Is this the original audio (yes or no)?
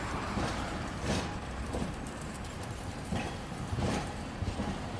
no